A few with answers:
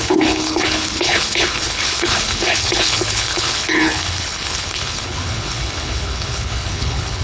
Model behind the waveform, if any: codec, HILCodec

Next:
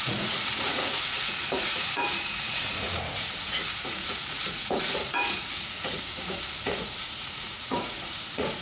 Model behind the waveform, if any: vocoder, Vocos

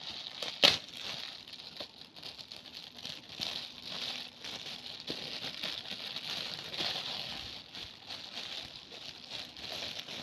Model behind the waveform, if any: none